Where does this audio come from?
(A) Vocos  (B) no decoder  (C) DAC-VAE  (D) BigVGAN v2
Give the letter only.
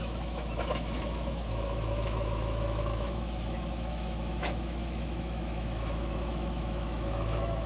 C